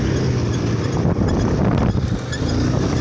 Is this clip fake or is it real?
real